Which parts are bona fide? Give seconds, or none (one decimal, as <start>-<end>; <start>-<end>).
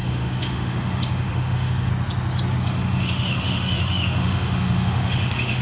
1.9-2.6